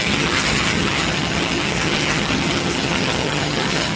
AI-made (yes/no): yes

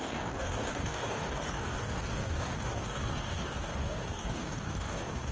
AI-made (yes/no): yes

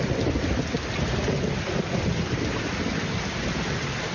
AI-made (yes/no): no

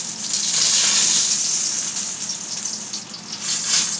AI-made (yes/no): no